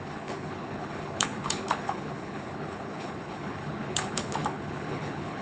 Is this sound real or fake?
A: fake